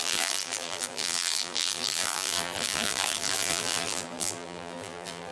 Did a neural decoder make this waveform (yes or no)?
yes